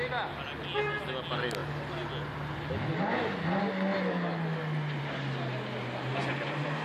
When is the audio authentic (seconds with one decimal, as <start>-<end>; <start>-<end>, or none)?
0.0-6.8